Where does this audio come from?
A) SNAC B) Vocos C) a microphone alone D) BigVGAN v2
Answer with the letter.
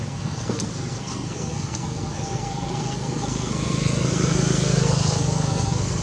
A